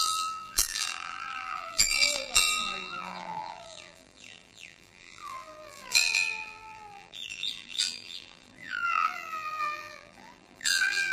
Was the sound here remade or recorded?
remade